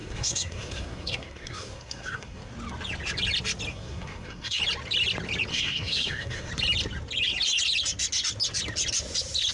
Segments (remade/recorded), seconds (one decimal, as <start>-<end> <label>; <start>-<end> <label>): 0.0-2.5 remade; 2.5-3.7 recorded; 3.7-4.6 remade; 4.6-5.5 recorded; 5.5-6.5 remade; 6.5-9.5 recorded

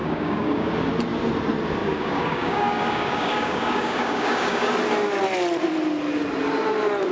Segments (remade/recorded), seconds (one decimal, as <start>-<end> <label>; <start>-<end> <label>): 0.0-0.7 remade; 0.7-1.8 recorded; 1.8-4.7 remade; 4.7-7.1 recorded

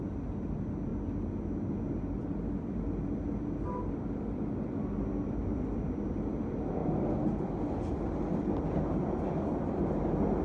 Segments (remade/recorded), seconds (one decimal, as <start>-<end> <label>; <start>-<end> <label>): 0.0-10.4 recorded

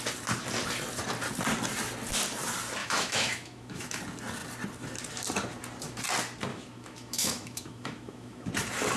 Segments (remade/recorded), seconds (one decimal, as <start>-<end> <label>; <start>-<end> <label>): 0.0-2.8 recorded; 2.8-4.0 remade; 4.0-6.5 recorded; 6.5-8.5 remade; 8.5-9.0 recorded

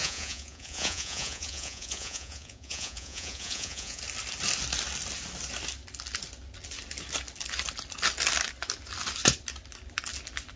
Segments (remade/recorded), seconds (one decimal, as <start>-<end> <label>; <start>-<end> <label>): 0.0-4.0 remade; 4.0-10.6 recorded